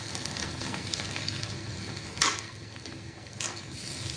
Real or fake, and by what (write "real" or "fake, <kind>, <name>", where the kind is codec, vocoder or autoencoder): fake, codec, SNAC